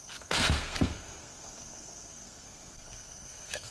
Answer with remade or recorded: remade